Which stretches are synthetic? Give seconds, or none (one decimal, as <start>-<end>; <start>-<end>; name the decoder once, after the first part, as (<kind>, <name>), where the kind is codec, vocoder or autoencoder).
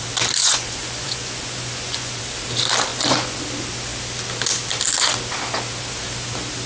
0.4-2.2 (vocoder, Vocos); 2.9-3.4